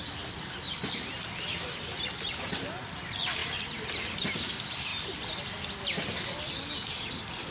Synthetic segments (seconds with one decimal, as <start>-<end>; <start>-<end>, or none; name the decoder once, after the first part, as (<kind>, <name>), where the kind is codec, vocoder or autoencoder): none